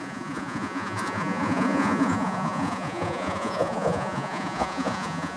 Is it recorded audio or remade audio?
remade